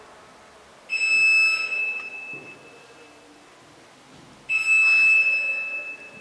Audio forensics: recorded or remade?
recorded